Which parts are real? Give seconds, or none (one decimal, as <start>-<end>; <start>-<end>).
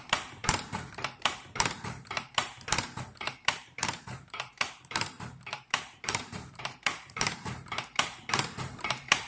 none